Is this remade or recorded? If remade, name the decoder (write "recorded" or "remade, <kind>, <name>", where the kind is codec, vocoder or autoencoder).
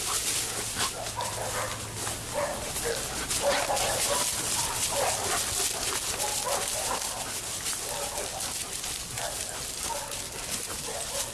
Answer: recorded